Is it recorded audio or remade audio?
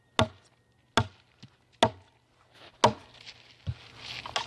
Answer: recorded